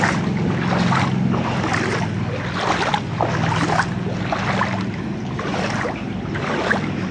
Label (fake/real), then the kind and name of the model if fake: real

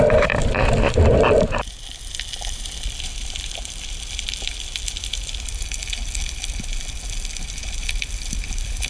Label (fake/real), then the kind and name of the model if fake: fake, vocoder, BigVGAN v2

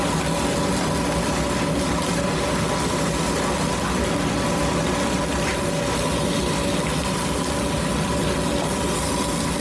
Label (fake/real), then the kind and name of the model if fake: real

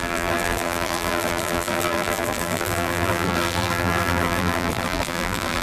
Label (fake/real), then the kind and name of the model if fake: fake, vocoder, BigVGAN v2